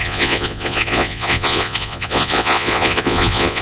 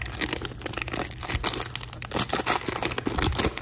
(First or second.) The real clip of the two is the second